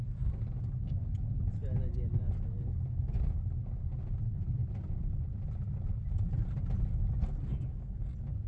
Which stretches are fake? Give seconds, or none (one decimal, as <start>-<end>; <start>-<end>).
none